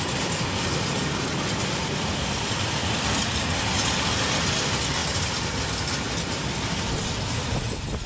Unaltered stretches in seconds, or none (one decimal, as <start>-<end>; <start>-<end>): 0.0-8.1